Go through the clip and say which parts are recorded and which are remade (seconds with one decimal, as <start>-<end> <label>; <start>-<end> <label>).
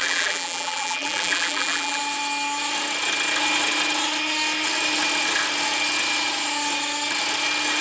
0.0-2.0 remade; 2.0-7.8 recorded